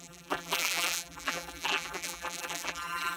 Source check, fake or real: fake